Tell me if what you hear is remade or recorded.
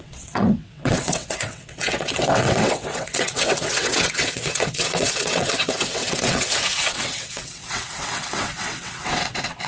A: remade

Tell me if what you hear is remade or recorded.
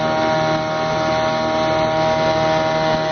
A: recorded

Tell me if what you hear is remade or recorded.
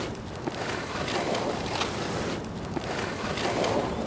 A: remade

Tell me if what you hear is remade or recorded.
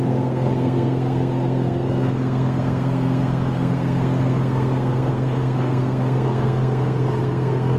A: remade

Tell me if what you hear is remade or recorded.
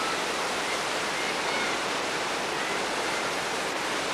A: remade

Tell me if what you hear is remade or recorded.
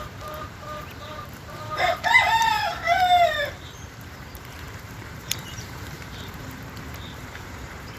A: remade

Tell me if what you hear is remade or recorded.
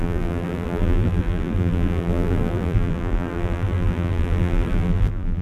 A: remade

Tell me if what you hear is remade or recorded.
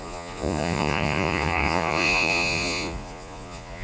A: remade